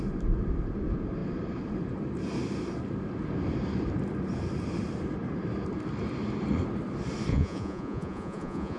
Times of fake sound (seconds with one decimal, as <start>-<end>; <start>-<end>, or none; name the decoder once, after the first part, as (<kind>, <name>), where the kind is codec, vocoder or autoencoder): 7.3-8.8 (vocoder, Vocos)